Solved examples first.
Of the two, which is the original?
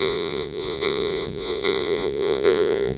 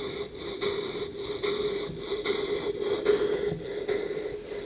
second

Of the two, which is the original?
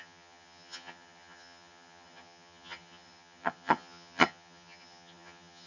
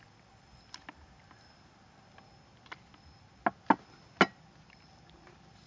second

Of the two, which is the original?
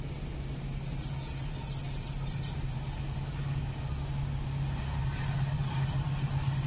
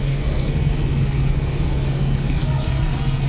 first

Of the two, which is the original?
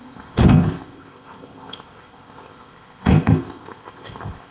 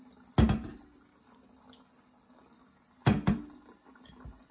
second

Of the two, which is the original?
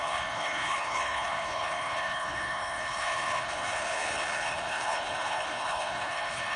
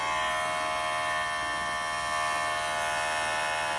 second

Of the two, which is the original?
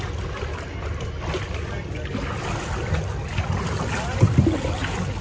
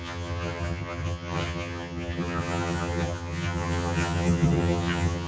first